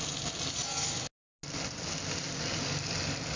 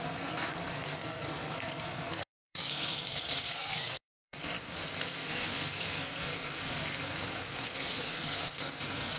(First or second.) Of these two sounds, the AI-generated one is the second